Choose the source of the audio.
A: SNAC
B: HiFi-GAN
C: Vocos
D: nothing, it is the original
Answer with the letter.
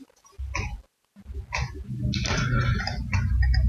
D